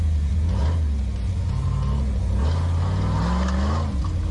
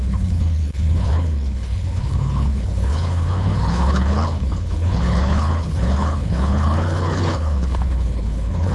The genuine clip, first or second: first